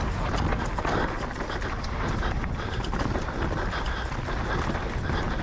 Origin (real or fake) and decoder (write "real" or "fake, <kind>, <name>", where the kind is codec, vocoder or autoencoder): real